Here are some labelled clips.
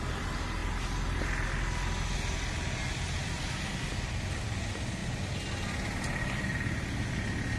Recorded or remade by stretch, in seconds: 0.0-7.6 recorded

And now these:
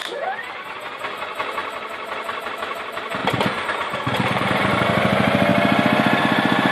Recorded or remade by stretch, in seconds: 0.0-0.8 remade; 0.8-3.2 recorded; 3.2-4.6 remade; 4.6-6.7 recorded

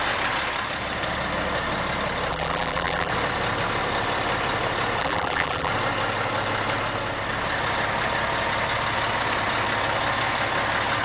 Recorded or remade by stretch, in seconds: 0.0-2.3 recorded; 2.3-3.1 remade; 3.1-5.0 recorded; 5.0-5.7 remade; 5.7-11.0 recorded

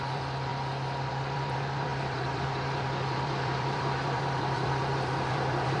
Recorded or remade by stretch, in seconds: 0.0-0.5 remade; 0.5-1.1 recorded; 1.1-5.8 remade